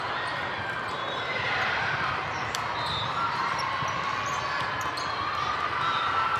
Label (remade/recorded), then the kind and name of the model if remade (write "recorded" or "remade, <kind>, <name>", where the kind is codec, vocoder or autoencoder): recorded